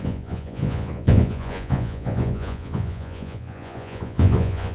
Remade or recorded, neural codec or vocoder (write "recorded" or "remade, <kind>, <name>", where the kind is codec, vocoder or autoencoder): remade, vocoder, Vocos